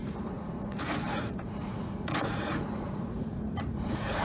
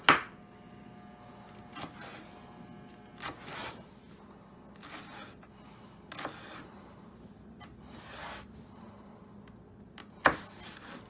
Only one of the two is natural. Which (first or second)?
second